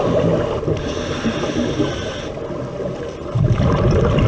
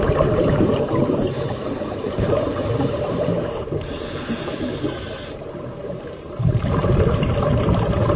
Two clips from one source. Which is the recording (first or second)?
first